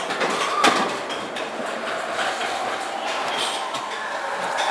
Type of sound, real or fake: real